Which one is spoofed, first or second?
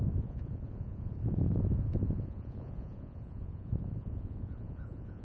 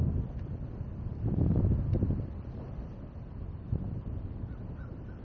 first